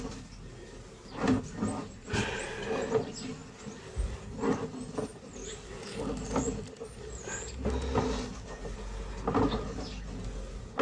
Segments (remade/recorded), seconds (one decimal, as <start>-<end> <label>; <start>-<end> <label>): 0.0-1.8 recorded; 1.8-2.5 remade; 2.5-5.1 recorded; 5.1-7.0 remade; 7.0-10.8 recorded